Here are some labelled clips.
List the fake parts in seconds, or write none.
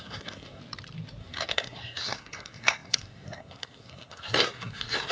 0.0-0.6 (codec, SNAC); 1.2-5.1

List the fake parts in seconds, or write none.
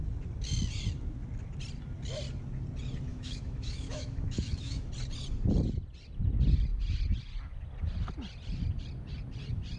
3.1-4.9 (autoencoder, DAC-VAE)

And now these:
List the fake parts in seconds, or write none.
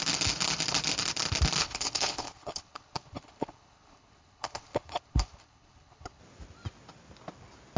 1.6-6.2 (codec, HILCodec)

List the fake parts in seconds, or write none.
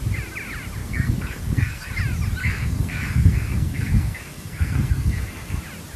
0.8-1.9 (codec, SNAC); 2.4-5.6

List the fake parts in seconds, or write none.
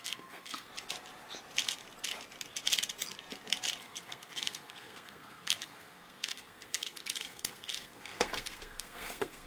0.0-0.7 (codec, SNAC); 3.8-9.5